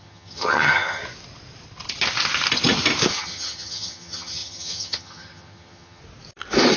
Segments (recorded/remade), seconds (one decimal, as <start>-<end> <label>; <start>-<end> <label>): 0.0-1.0 remade; 1.0-3.1 recorded; 3.1-6.0 remade; 6.0-6.8 recorded